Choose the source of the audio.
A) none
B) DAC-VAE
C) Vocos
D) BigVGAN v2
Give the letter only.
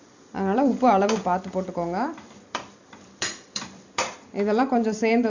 D